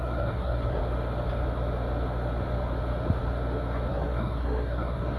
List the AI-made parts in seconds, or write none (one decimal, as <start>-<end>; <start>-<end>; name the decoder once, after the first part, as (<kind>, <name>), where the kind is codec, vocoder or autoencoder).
0.0-0.8 (codec, SNAC); 3.9-5.2